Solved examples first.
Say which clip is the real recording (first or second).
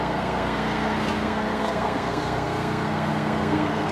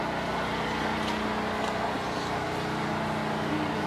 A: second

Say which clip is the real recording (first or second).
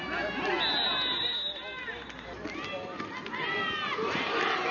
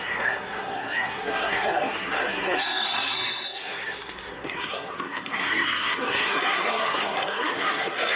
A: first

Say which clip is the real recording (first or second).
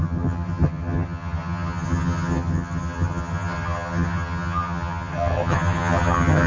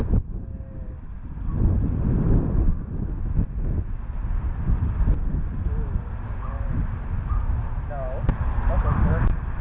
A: second